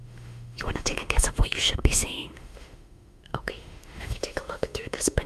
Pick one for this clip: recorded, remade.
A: remade